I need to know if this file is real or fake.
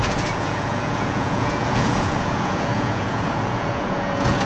fake